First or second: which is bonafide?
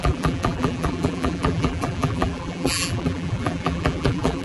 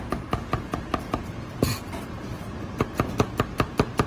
second